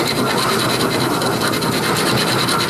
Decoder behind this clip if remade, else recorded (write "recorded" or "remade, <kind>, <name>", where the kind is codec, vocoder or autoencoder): recorded